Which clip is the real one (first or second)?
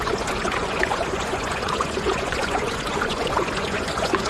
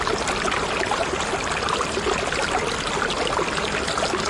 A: second